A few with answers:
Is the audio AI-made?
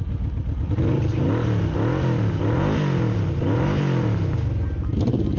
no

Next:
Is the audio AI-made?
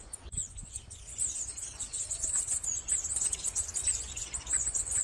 yes